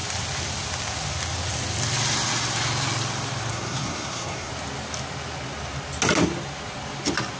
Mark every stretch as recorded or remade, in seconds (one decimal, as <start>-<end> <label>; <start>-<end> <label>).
0.0-3.5 recorded; 3.5-4.5 remade; 4.5-7.4 recorded